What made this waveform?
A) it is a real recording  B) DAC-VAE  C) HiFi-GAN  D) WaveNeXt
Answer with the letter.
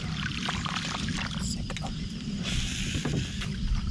A